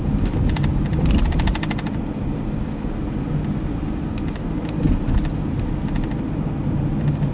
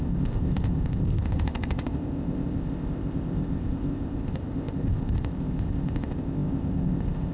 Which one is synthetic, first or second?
second